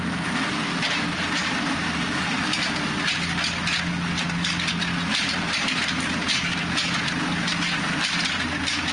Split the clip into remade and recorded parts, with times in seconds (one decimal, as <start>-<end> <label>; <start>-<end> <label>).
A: 0.0-1.4 recorded; 1.4-2.4 remade; 2.4-5.2 recorded; 5.2-5.9 remade; 5.9-8.9 recorded

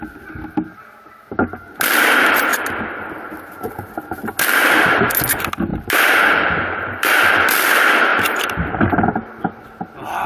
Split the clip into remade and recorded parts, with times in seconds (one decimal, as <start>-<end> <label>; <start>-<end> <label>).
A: 0.0-5.7 recorded; 5.7-7.1 remade; 7.1-8.1 recorded; 8.1-9.0 remade; 9.0-10.3 recorded